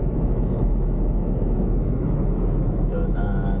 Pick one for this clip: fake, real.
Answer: fake